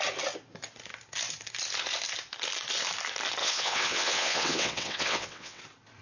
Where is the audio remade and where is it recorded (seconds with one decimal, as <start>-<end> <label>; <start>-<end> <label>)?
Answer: 0.0-3.4 recorded; 3.4-5.6 remade; 5.6-6.0 recorded